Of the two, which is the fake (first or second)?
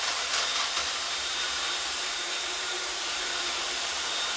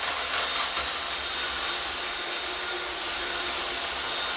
first